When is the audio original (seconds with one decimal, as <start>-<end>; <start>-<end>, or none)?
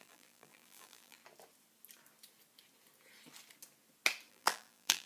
1.2-4.3